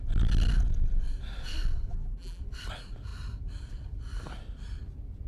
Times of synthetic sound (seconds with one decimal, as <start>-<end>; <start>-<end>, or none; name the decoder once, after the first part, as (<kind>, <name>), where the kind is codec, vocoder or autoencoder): 1.9-2.4 (vocoder, BigVGAN v2)

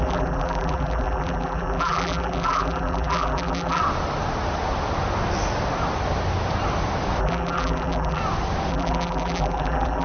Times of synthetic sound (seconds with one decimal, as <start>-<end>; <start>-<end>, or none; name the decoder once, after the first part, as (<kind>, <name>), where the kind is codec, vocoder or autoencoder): 0.0-3.8 (vocoder, BigVGAN v2); 7.2-8.2; 8.7-10.0